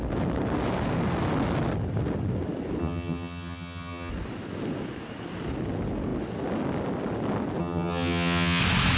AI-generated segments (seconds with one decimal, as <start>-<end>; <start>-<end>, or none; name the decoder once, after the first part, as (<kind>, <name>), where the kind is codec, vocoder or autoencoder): 2.8-4.1 (vocoder, HiFi-GAN); 7.6-8.6